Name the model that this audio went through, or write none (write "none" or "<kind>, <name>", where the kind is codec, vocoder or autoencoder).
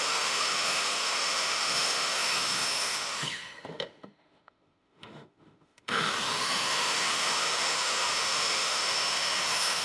autoencoder, DAC-VAE